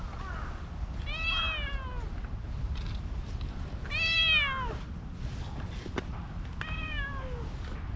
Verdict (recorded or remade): recorded